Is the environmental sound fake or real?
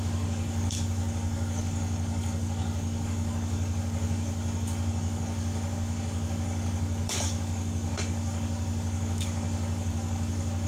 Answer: fake